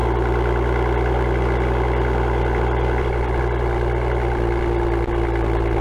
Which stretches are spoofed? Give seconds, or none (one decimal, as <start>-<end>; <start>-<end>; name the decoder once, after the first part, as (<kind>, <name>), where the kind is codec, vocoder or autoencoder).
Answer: none